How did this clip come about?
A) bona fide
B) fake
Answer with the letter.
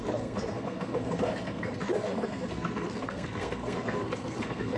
B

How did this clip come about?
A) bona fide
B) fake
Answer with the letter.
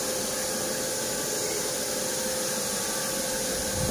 A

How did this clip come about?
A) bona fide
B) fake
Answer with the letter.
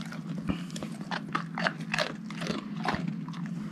A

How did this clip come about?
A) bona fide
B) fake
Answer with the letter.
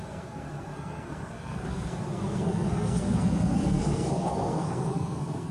B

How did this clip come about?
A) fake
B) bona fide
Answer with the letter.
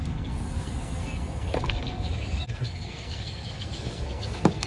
A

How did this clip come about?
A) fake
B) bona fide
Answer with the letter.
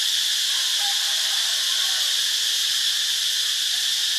B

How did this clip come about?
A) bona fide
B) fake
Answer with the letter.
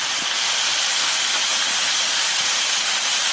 A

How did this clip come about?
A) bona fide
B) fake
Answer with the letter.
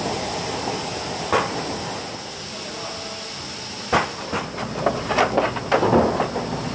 A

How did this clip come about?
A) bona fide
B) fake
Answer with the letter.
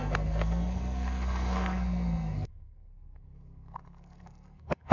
B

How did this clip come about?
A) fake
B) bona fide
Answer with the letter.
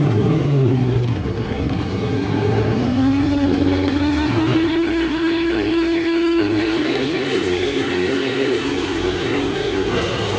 A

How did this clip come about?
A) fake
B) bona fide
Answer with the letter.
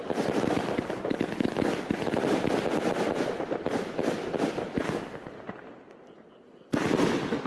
B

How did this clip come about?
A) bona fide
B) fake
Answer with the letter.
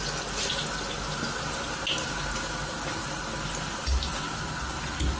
A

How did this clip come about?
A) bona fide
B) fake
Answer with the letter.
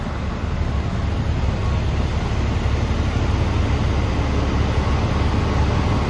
A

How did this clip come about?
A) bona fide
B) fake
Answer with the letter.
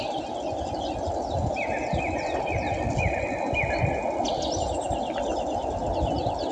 A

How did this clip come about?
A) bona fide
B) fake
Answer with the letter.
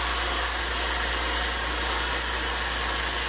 A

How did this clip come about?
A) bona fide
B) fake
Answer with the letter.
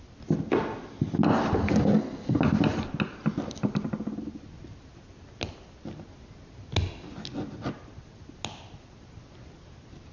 A